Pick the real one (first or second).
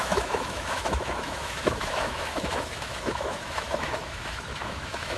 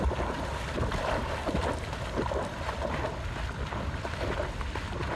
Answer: second